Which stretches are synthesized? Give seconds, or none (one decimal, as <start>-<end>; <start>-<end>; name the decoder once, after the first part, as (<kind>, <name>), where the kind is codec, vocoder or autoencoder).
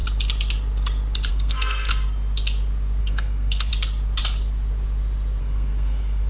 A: 1.3-1.9 (codec, SNAC); 3.0-3.7; 5.4-6.3